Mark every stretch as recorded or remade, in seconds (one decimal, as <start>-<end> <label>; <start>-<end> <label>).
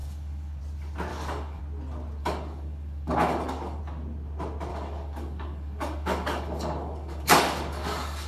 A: 0.0-0.6 remade; 0.6-1.1 recorded; 1.1-1.6 remade; 1.6-2.2 recorded; 2.2-3.8 remade; 3.8-4.7 recorded; 4.7-8.3 remade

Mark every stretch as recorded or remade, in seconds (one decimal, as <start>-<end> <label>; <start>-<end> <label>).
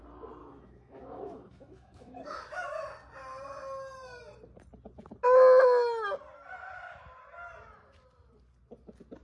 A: 0.0-0.4 recorded; 0.4-2.8 remade; 2.8-9.2 recorded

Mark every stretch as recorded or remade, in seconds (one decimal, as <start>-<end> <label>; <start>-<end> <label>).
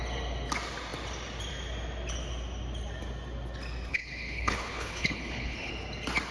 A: 0.0-3.9 recorded; 3.9-5.7 remade; 5.7-6.3 recorded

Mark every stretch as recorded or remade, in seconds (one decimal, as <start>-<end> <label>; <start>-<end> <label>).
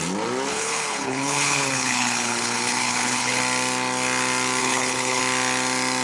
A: 0.0-0.5 recorded; 0.5-3.4 remade; 3.4-4.6 recorded; 4.6-5.2 remade; 5.2-6.0 recorded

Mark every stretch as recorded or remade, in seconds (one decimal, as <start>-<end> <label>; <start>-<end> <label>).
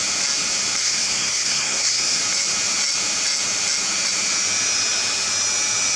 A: 0.0-0.8 recorded; 0.8-2.2 remade; 2.2-6.0 recorded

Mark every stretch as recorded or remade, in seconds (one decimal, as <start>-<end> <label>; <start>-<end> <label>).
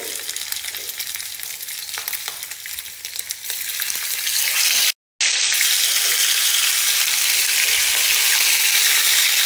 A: 0.0-9.5 recorded